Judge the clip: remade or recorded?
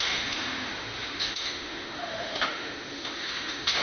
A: remade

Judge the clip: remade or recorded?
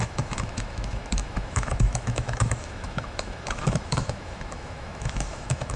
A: remade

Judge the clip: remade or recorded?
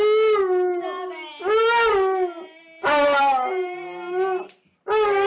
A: recorded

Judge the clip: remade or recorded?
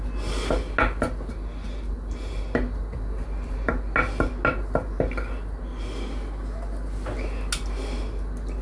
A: recorded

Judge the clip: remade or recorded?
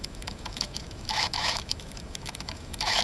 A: remade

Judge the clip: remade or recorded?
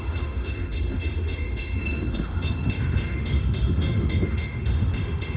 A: remade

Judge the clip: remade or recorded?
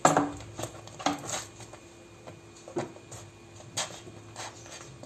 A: recorded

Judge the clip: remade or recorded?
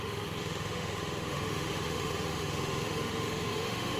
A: remade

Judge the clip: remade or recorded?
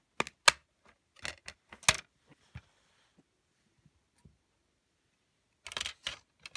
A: recorded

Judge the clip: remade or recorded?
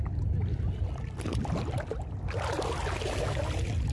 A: recorded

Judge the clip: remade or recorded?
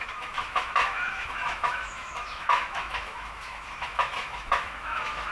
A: remade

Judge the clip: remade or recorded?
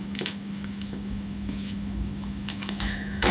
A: remade